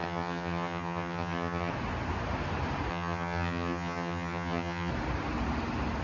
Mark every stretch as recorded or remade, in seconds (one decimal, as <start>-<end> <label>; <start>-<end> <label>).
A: 0.0-1.7 remade; 1.7-2.9 recorded; 2.9-4.9 remade; 4.9-6.0 recorded